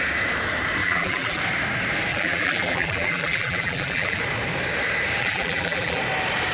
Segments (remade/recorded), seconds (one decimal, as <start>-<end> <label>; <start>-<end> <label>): 0.0-0.8 recorded; 0.8-1.4 remade; 1.4-2.1 recorded; 2.1-4.2 remade; 4.2-5.2 recorded; 5.2-6.0 remade; 6.0-6.5 recorded

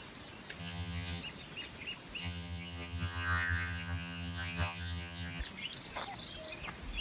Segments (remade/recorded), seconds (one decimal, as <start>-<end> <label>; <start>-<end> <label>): 0.0-0.6 recorded; 0.6-1.2 remade; 1.2-2.2 recorded; 2.2-5.4 remade; 5.4-7.0 recorded

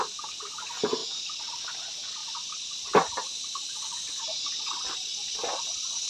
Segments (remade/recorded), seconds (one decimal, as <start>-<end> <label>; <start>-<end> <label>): 0.0-2.2 recorded; 2.2-2.8 remade; 2.8-6.1 recorded